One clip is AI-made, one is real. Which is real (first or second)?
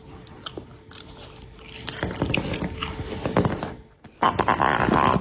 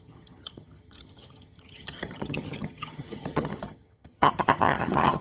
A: first